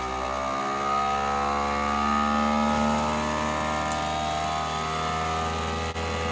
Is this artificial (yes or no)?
no